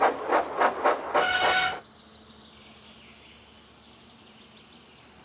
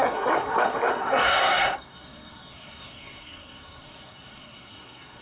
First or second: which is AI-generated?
second